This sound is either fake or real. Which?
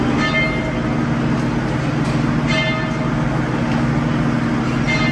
real